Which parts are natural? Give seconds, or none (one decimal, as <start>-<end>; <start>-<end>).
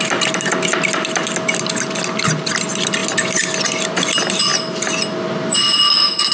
0.0-6.3